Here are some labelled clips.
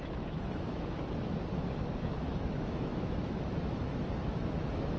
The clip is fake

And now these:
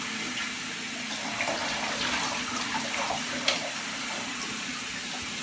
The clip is real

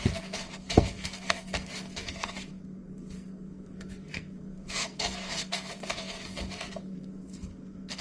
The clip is fake